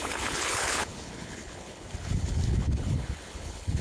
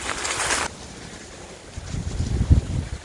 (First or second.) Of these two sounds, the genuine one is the second